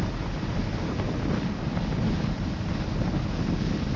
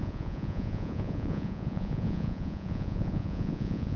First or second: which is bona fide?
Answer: first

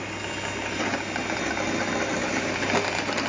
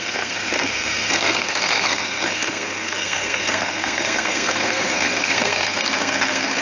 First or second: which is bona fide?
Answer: first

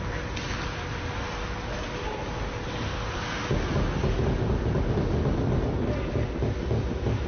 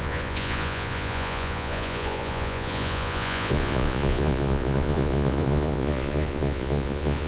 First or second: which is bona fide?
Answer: first